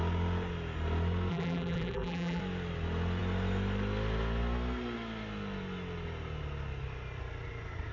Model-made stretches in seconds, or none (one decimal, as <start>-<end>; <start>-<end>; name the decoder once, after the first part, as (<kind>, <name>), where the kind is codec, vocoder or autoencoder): 1.3-2.4 (vocoder, BigVGAN v2)